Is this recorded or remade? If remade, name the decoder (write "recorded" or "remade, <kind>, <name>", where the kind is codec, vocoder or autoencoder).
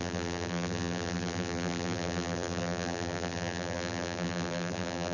remade, vocoder, BigVGAN v2